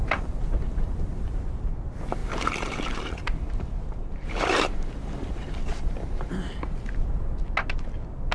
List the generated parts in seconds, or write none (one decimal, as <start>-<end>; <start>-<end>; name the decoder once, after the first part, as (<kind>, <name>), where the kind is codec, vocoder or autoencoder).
0.0-0.9 (vocoder, BigVGAN v2); 2.2-6.3